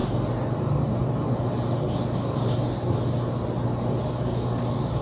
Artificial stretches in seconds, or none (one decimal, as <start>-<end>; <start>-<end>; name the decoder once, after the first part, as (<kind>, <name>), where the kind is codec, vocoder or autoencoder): none